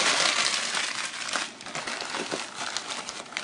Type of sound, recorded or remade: recorded